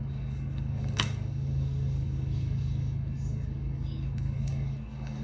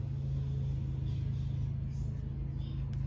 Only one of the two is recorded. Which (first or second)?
second